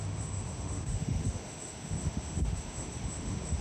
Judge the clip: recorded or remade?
remade